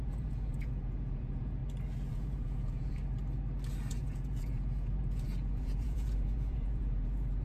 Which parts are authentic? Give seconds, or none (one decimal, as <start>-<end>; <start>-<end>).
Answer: 1.6-2.1; 3.0-3.9